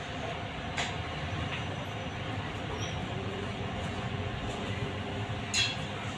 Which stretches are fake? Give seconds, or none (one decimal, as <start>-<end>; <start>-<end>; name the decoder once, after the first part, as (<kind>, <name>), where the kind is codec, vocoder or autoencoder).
3.0-5.1 (vocoder, Vocos)